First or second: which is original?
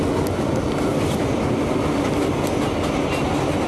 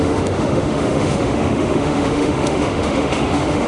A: first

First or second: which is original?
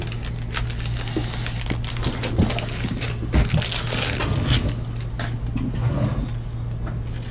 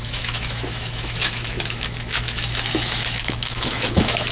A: first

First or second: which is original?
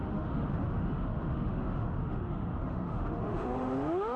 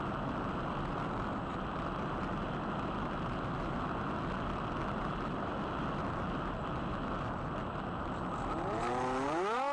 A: second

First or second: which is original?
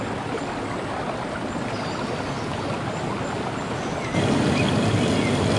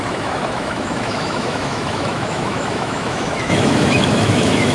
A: first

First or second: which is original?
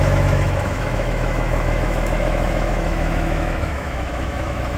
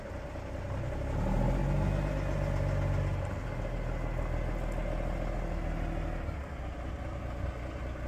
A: second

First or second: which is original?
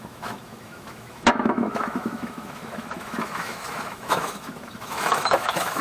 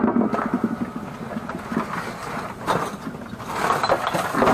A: second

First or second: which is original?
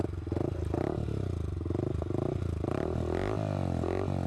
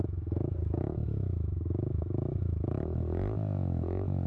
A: first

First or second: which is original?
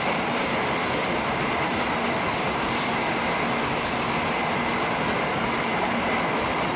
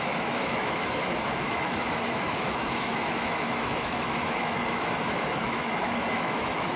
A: first